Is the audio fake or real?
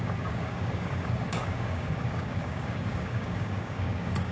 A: fake